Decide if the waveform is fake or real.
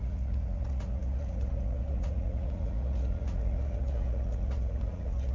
fake